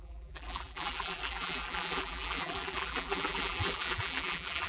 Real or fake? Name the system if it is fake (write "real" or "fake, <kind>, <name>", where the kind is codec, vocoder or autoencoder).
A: fake, vocoder, BigVGAN v2